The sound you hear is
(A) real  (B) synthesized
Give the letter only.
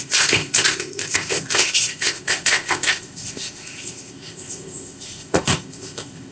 B